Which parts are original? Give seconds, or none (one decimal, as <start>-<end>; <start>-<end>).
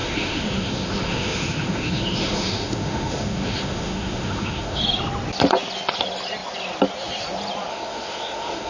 4.8-7.7